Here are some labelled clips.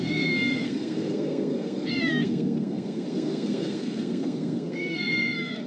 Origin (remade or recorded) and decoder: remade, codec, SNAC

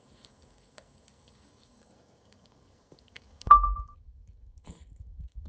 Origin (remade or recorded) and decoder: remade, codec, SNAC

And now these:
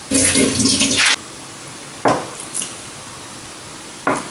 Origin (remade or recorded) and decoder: recorded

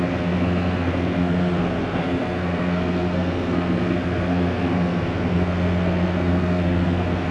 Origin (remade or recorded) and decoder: remade, codec, SNAC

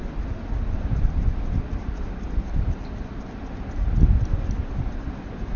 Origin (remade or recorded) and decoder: recorded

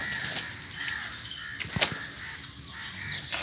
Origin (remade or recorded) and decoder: recorded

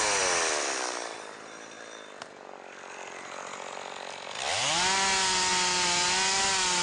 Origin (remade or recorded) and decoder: recorded